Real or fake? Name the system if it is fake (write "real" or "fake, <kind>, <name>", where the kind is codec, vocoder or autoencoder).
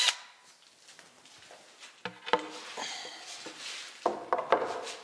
real